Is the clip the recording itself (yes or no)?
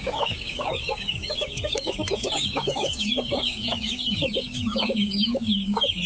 no